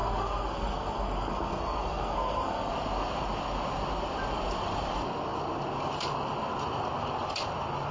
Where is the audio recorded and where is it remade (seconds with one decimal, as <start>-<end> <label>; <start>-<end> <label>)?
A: 0.0-2.7 remade; 2.7-7.9 recorded